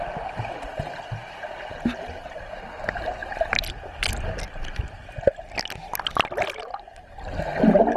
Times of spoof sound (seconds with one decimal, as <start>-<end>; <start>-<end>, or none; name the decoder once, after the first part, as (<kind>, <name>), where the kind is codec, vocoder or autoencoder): 3.2-5.6 (vocoder, BigVGAN v2)

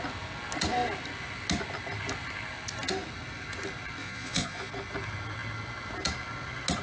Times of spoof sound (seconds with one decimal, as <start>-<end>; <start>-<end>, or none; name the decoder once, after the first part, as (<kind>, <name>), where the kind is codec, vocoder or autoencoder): 4.0-4.7 (vocoder, Vocos)